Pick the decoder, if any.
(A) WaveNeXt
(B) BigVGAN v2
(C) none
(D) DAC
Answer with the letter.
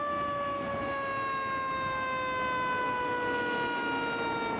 C